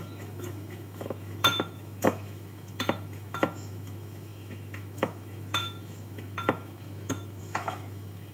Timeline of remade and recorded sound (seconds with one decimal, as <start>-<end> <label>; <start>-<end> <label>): 0.0-8.3 remade